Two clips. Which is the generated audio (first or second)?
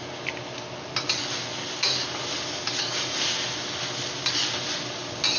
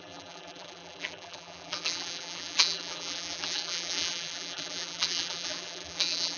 second